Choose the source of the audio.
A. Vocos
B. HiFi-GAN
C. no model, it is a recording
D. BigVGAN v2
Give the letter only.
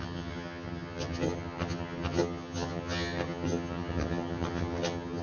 B